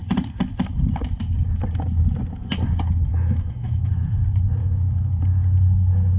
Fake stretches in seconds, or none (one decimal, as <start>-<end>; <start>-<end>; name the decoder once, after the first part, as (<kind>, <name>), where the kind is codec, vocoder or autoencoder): 3.1-3.9 (autoencoder, DAC-VAE); 4.6-5.2